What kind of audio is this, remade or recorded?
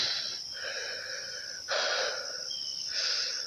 recorded